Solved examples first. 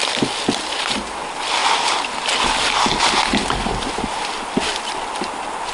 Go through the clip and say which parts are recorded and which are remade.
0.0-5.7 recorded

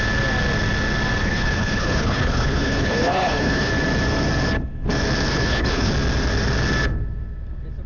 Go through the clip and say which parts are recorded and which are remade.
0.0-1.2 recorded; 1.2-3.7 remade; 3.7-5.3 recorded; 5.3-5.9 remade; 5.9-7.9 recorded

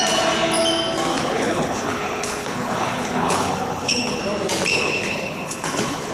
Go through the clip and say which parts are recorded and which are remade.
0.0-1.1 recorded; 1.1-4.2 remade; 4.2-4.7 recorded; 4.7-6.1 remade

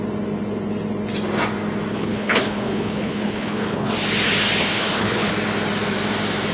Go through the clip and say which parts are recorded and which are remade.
0.0-1.9 recorded; 1.9-3.9 remade; 3.9-4.6 recorded; 4.6-5.3 remade; 5.3-6.5 recorded